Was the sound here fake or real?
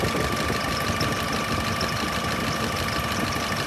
real